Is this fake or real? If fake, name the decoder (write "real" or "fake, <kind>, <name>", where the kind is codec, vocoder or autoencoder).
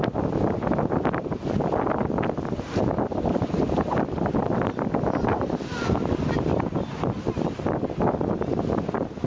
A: real